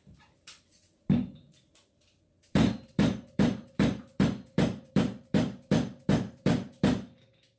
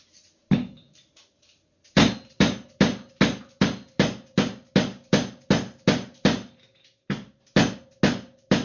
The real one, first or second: second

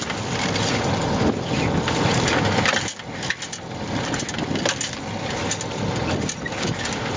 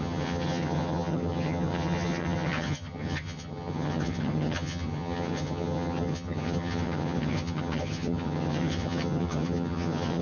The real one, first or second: first